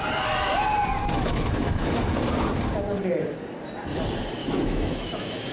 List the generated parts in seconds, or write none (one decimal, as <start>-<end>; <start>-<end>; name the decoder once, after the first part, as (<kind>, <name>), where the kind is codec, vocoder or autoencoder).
1.0-2.2 (autoencoder, DAC-VAE); 4.4-5.5